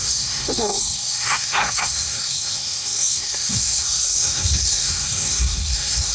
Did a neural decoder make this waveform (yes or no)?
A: yes